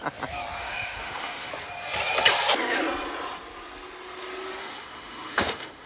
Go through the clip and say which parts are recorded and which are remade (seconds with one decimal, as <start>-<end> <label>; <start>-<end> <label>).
0.0-0.6 recorded; 0.6-1.5 remade; 1.5-4.6 recorded; 4.6-5.9 remade